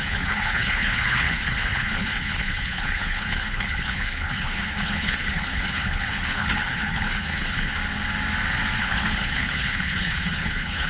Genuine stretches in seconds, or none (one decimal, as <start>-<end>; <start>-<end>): 7.7-8.8